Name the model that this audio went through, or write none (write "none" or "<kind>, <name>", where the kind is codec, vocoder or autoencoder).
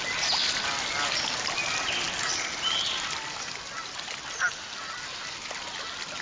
none